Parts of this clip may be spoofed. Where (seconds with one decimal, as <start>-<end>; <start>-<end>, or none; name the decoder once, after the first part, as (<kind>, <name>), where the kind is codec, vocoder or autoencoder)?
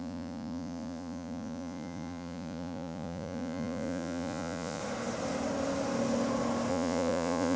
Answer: 0.0-4.8 (vocoder, Vocos); 6.7-7.6